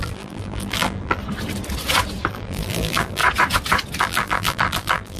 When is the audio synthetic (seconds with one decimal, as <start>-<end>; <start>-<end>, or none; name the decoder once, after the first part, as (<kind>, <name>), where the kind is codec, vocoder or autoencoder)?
0.0-1.2 (vocoder, BigVGAN v2); 2.3-3.2; 4.0-5.2